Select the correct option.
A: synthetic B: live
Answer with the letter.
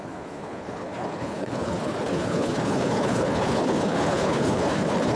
A